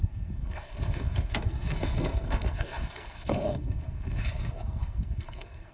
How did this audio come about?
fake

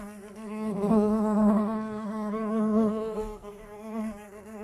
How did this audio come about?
fake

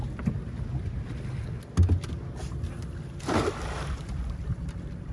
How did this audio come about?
real